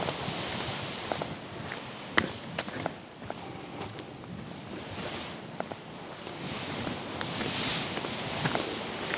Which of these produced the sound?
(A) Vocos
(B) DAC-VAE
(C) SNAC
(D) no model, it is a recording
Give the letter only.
D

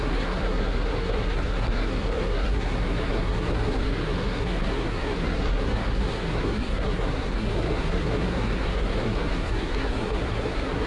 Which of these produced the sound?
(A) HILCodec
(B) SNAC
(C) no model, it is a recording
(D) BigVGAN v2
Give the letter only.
B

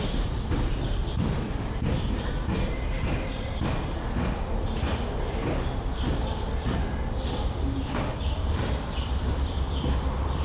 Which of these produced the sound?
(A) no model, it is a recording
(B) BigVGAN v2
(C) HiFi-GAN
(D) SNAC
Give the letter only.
B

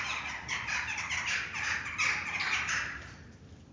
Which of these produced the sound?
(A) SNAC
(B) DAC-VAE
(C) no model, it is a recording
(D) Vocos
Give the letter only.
C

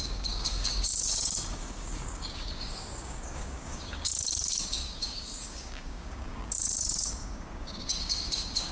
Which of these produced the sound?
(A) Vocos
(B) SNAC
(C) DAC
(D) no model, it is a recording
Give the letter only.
C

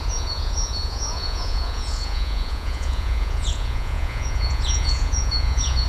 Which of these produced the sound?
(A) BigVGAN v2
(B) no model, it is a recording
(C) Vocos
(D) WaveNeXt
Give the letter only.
C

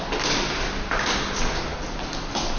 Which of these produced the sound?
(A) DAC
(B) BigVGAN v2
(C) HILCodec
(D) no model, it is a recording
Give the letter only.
D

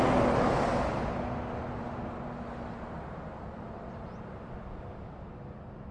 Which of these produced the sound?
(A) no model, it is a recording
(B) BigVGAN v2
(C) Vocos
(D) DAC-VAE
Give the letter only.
A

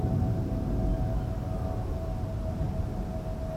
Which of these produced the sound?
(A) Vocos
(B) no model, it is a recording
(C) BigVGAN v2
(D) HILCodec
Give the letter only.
B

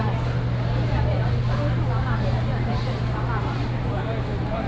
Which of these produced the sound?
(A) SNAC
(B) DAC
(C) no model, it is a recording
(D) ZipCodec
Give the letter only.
C